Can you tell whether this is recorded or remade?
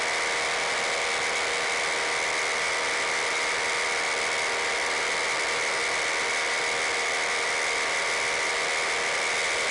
recorded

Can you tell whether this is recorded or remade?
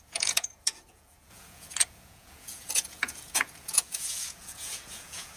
remade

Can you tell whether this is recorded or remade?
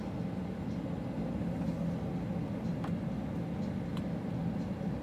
recorded